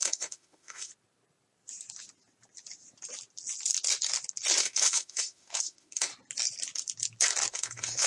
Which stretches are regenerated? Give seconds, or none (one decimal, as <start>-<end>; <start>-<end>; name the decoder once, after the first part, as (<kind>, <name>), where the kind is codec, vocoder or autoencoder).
0.0-0.9 (autoencoder, DAC-VAE); 4.6-6.1; 7.5-8.1